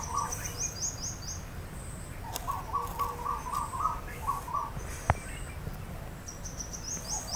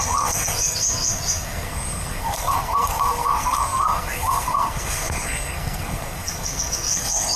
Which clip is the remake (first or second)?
second